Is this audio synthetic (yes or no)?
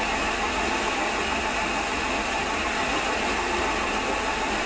no